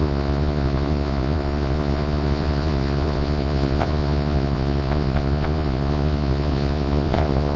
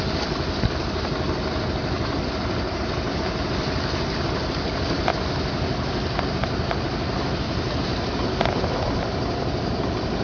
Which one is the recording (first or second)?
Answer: second